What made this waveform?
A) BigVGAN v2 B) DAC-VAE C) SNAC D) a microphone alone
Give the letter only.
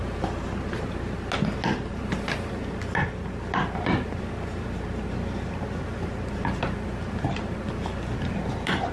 D